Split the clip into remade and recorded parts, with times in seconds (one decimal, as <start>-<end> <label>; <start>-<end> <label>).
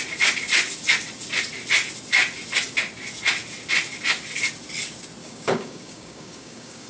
0.0-5.2 recorded; 5.2-6.9 remade